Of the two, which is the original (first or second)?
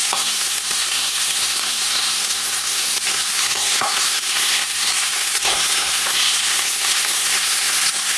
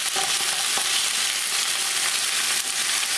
second